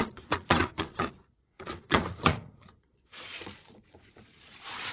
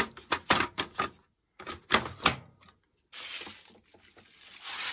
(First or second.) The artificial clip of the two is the first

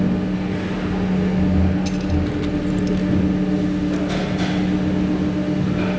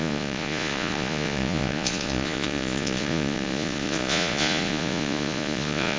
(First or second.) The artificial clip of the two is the second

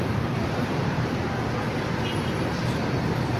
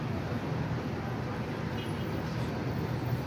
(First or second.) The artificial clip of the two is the first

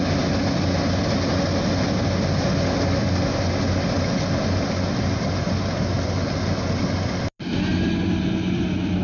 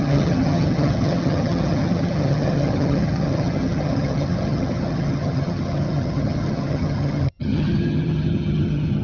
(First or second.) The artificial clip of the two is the second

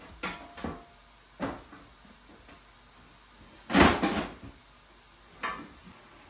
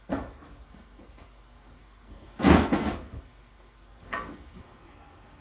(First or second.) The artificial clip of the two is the second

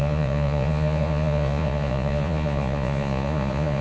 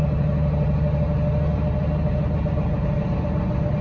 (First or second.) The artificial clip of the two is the first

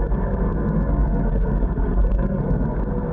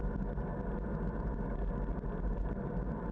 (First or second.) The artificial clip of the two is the first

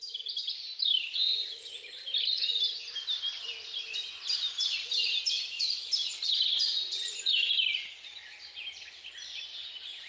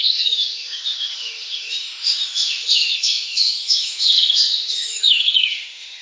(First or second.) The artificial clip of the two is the second